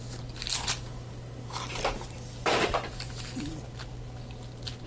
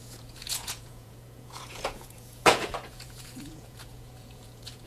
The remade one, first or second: second